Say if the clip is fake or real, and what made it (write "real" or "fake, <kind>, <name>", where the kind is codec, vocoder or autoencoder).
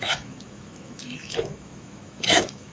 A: fake, autoencoder, DAC-VAE